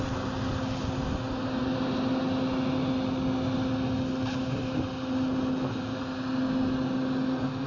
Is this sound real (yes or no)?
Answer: yes